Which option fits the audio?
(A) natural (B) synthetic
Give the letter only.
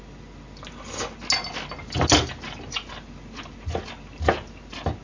A